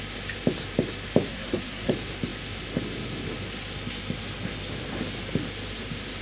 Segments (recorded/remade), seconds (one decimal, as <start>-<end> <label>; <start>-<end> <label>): 0.0-1.2 recorded; 1.2-1.9 remade; 1.9-6.2 recorded